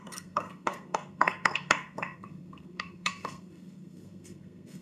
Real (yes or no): no